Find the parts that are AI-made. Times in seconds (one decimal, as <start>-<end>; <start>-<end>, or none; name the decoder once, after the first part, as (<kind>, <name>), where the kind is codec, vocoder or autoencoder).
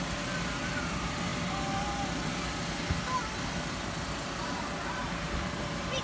none